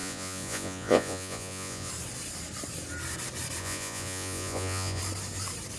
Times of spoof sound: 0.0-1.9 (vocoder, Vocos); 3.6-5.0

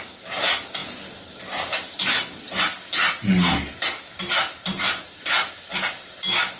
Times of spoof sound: none

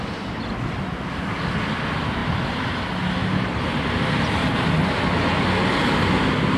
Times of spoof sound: none

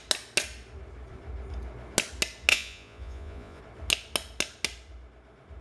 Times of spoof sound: 2.5-3.6 (vocoder, Vocos)